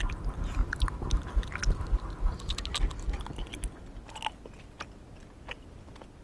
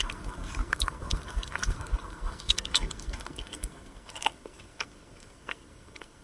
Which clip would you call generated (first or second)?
second